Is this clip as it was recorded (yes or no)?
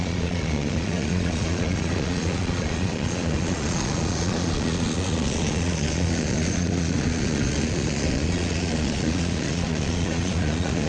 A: no